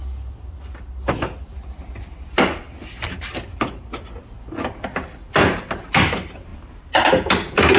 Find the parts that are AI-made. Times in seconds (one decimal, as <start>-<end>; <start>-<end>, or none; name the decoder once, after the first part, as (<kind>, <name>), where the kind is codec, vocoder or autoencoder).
0.0-7.8 (vocoder, BigVGAN v2)